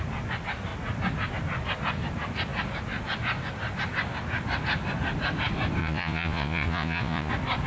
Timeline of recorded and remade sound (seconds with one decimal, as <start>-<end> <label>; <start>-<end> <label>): 0.0-5.8 recorded; 5.8-7.3 remade; 7.3-7.7 recorded